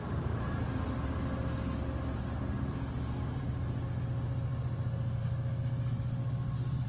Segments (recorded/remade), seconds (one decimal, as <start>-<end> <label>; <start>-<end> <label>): 0.0-6.9 recorded